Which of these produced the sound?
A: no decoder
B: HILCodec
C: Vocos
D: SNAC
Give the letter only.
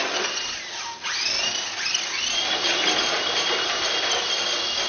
A